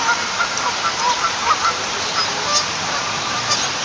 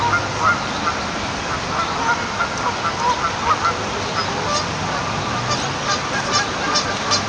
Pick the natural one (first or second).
second